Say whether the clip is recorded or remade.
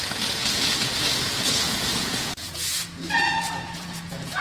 remade